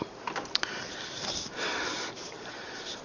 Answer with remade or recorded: recorded